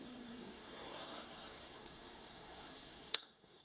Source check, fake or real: fake